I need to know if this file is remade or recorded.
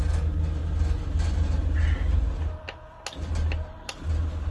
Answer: recorded